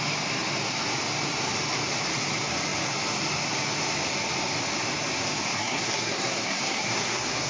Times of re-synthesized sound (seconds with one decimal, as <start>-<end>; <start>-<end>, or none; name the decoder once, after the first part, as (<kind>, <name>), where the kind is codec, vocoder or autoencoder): 5.4-7.5 (codec, SNAC)